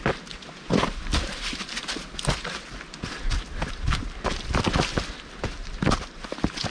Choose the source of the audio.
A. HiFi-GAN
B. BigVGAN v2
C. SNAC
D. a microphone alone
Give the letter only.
B